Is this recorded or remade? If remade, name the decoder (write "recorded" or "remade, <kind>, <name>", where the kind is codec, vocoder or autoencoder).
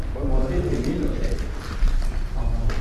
recorded